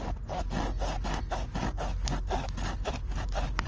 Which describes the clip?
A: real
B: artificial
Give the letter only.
A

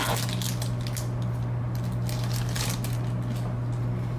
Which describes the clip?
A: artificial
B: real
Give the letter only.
B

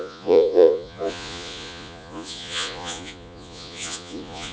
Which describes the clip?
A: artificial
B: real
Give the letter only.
A